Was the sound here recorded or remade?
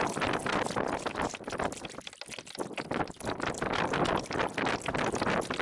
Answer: recorded